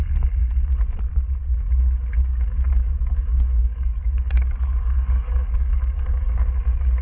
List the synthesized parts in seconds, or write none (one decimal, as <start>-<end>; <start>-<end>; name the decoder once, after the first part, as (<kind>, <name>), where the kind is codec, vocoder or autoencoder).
2.3-6.4 (codec, DAC)